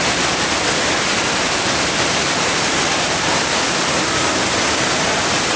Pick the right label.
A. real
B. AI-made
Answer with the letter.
A